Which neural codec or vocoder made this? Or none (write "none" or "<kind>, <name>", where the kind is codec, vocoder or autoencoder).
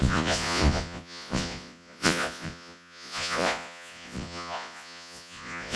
vocoder, Vocos